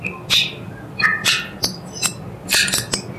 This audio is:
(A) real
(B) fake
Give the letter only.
A